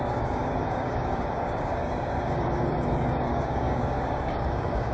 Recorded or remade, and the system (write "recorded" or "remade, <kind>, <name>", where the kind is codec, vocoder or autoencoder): remade, codec, DAC